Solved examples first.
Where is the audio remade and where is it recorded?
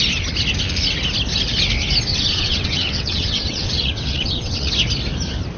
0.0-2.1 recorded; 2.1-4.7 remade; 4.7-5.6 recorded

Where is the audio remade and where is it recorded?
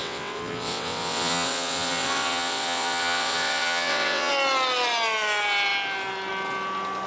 0.0-4.3 remade; 4.3-7.1 recorded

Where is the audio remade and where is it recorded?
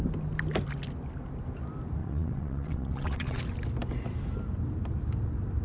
0.0-2.0 recorded; 2.0-3.4 remade; 3.4-5.6 recorded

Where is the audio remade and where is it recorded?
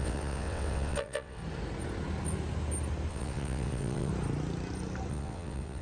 0.0-1.4 remade; 1.4-3.1 recorded; 3.1-4.1 remade; 4.1-5.1 recorded; 5.1-5.8 remade